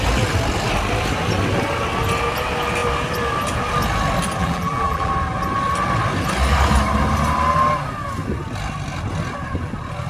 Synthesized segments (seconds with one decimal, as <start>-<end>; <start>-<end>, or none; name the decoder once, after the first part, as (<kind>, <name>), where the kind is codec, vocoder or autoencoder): 4.4-5.1 (vocoder, BigVGAN v2)